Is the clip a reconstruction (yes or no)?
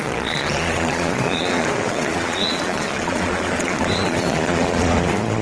yes